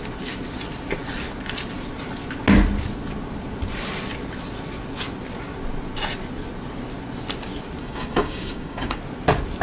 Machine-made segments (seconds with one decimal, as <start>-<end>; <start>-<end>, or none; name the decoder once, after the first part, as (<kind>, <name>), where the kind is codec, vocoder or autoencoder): 7.8-9.0 (codec, DAC)